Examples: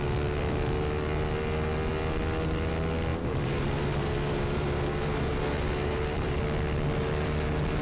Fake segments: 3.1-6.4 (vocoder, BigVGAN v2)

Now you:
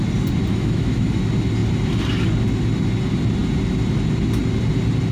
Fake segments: 0.5-1.2 (autoencoder, DAC-VAE)

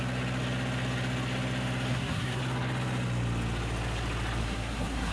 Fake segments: 1.9-2.4 (codec, SNAC); 4.4-5.1

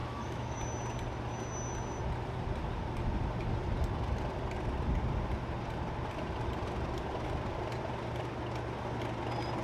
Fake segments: 0.0-0.6 (autoencoder, DAC-VAE)

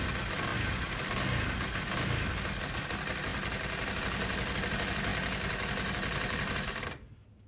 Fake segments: none

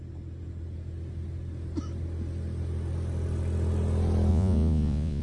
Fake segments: 4.3-5.2 (vocoder, Vocos)

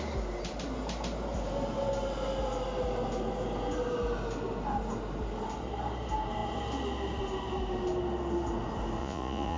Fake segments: 9.0-9.6 (vocoder, Vocos)

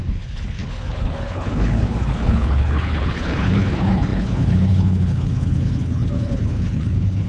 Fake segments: 0.0-7.3 (codec, HILCodec)